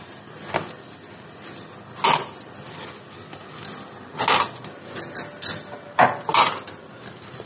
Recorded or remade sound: recorded